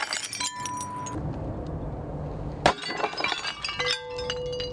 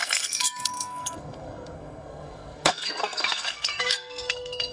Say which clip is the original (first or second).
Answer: first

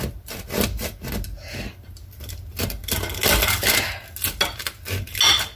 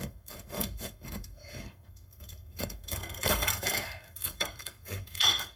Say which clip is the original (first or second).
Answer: first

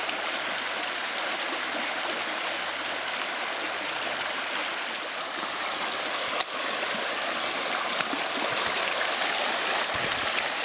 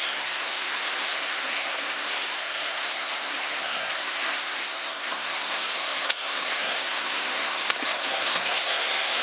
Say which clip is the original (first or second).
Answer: first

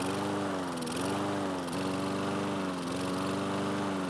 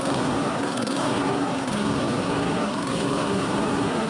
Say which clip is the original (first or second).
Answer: first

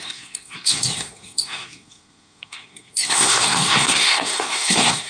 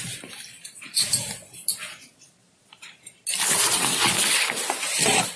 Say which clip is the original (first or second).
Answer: second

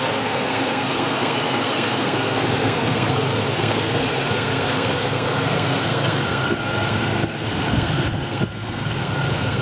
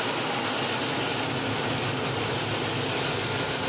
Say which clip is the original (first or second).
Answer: second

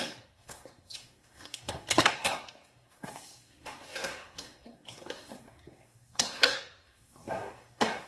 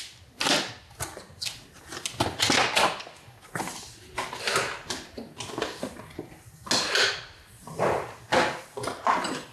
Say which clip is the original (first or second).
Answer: second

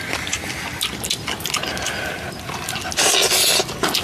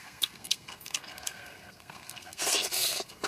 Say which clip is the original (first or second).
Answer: first